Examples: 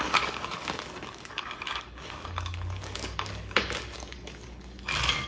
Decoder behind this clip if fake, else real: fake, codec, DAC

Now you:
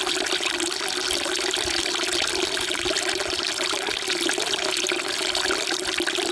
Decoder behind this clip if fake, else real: real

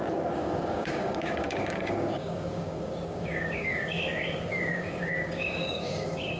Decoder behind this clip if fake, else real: fake, codec, DAC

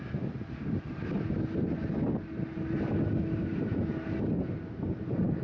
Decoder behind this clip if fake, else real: real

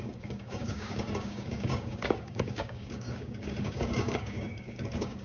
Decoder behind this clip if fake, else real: fake, codec, DAC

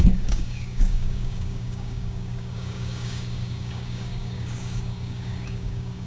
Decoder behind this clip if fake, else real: fake, codec, DAC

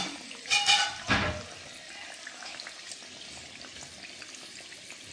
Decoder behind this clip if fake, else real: real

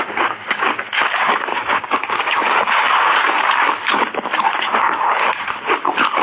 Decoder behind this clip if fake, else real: fake, codec, DAC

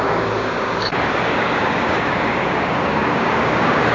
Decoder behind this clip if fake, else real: fake, codec, DAC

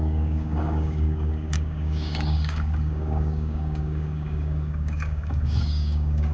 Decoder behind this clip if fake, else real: fake, codec, DAC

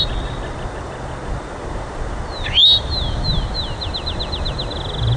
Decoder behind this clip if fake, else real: real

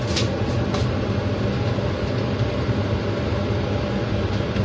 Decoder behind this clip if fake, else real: real